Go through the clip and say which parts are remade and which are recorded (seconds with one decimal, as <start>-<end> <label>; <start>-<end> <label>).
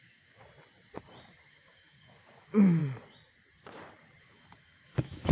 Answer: 0.0-0.4 remade; 0.4-1.5 recorded; 1.5-2.8 remade; 2.8-4.2 recorded; 4.2-5.3 remade